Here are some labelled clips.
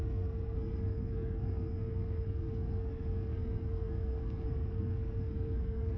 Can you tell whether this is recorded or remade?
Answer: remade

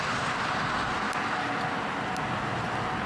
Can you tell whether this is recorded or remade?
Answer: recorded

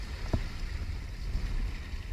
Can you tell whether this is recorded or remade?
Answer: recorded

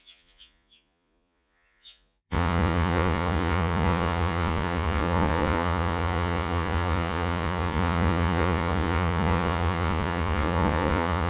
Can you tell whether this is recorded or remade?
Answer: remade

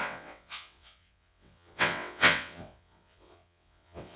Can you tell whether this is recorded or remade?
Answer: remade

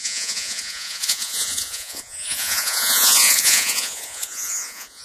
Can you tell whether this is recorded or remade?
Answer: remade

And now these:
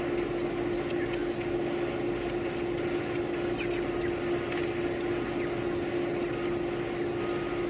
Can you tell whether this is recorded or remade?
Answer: recorded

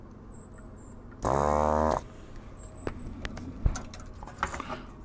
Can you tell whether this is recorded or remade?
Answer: recorded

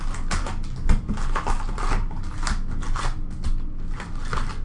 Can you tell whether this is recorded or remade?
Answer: recorded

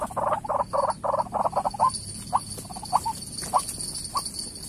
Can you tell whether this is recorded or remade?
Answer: recorded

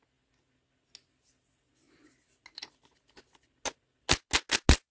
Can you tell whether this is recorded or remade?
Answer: recorded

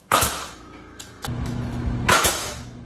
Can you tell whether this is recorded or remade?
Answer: remade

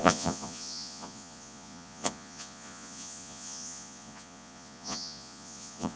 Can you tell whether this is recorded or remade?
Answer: remade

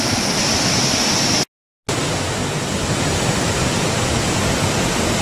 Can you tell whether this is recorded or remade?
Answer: recorded